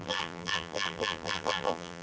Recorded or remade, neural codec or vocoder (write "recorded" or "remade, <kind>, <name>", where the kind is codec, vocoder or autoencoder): remade, vocoder, BigVGAN v2